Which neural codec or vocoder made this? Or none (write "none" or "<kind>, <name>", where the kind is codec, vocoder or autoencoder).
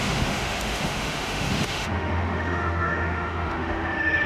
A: autoencoder, DAC-VAE